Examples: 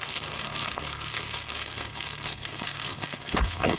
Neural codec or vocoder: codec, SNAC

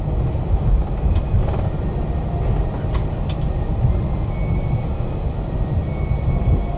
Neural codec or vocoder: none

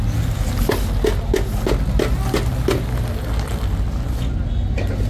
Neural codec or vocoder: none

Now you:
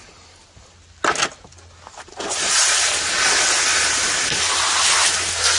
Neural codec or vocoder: none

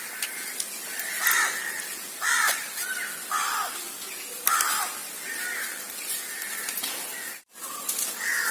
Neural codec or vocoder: none